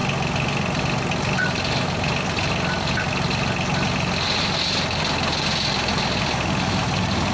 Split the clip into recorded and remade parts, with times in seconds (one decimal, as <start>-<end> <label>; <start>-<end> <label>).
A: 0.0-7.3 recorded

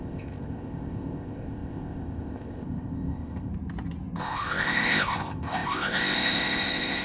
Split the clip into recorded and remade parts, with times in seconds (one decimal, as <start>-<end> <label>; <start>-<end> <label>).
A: 0.0-3.5 remade; 3.5-4.2 recorded; 4.2-7.0 remade

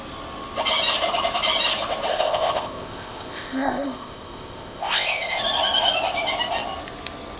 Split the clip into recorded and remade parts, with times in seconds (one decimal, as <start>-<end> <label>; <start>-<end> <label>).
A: 0.0-2.1 recorded; 2.1-5.4 remade; 5.4-7.4 recorded